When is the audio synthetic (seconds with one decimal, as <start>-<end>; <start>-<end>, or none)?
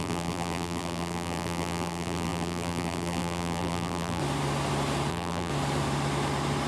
0.0-4.2; 5.1-5.5